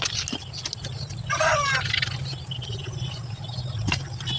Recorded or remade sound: recorded